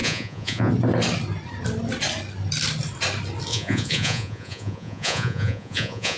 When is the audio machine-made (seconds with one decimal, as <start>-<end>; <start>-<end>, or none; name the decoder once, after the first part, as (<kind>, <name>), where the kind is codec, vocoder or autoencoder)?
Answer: 0.0-0.7 (vocoder, Vocos); 3.5-6.2